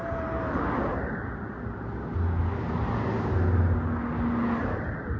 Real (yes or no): yes